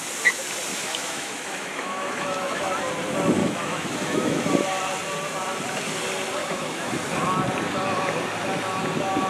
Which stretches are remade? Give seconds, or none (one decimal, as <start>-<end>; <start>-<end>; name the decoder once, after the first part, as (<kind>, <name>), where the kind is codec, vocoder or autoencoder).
0.7-2.7 (autoencoder, DAC-VAE); 3.4-4.5; 6.4-6.9